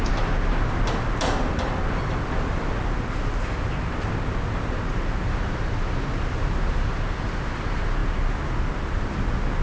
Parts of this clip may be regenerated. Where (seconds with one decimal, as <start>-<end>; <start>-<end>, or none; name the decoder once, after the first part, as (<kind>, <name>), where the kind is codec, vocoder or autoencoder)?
none